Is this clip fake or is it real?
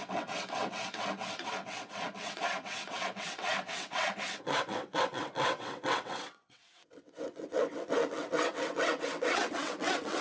fake